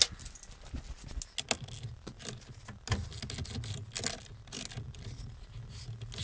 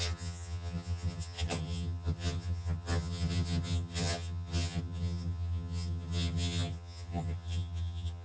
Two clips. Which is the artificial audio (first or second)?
second